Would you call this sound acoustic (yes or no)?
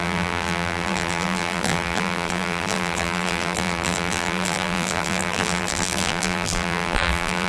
no